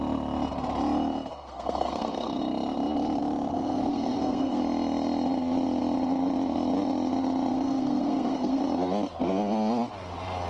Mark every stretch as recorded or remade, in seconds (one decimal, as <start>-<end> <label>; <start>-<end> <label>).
0.0-1.3 recorded; 1.3-2.4 remade; 2.4-3.5 recorded; 3.5-4.6 remade; 4.6-7.5 recorded; 7.5-8.6 remade; 8.6-10.5 recorded